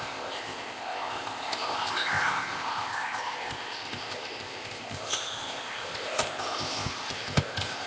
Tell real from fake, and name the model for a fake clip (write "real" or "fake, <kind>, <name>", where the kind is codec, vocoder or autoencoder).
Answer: fake, codec, ZipCodec